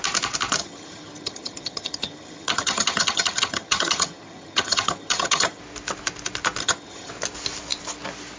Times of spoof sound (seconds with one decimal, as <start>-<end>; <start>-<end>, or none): 0.6-5.6; 6.6-7.1